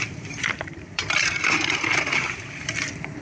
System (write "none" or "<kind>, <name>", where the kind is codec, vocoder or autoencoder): vocoder, BigVGAN v2